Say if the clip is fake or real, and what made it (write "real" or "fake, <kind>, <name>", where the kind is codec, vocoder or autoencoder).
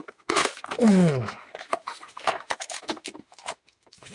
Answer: fake, autoencoder, DAC-VAE